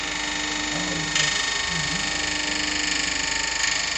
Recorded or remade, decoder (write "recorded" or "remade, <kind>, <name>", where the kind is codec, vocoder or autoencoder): recorded